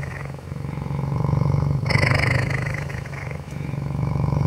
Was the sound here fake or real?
fake